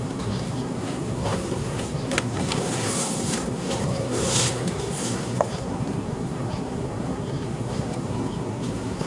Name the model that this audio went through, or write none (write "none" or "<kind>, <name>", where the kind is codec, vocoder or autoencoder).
codec, SNAC